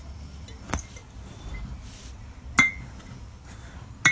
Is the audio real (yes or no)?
yes